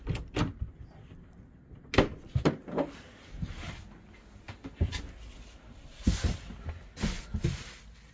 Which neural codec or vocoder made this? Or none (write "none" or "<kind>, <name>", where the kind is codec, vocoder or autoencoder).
none